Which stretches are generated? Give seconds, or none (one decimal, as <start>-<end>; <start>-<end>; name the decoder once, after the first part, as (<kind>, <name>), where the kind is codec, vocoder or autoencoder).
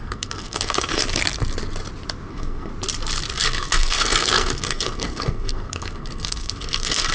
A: 0.0-1.0 (codec, SNAC); 2.3-2.7; 3.3-7.1